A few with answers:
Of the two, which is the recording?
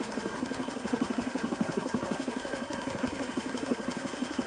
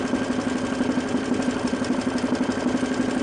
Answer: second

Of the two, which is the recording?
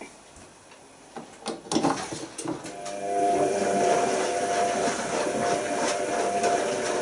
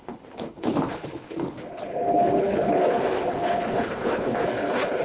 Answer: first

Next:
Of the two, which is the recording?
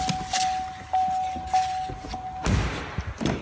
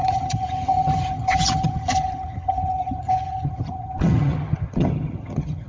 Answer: first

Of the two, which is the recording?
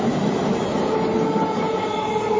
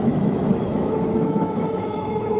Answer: first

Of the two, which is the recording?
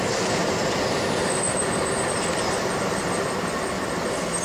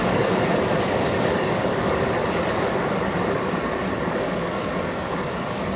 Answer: first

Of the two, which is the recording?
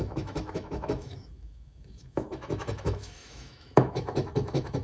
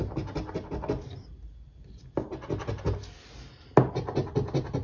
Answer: second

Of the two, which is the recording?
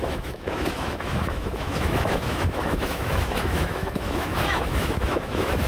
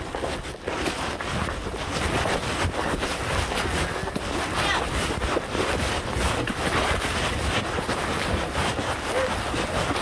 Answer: second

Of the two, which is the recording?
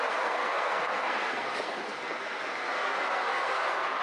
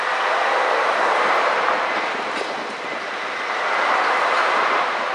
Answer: second